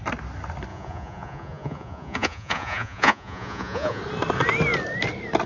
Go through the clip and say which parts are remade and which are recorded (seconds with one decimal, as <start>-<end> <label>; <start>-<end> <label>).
0.0-0.7 recorded; 0.7-4.0 remade; 4.0-5.5 recorded